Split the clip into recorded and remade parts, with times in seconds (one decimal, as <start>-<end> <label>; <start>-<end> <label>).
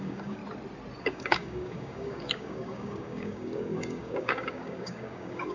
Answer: 0.0-0.4 remade; 0.4-1.0 recorded; 1.0-5.5 remade